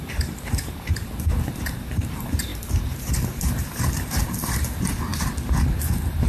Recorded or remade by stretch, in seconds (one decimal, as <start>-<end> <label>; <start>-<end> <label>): 0.0-5.1 remade; 5.1-5.8 recorded; 5.8-6.3 remade